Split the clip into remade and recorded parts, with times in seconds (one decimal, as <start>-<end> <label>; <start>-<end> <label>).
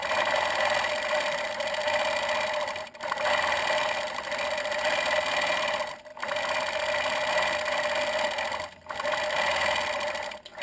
0.0-10.6 recorded